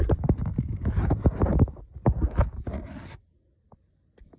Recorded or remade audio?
recorded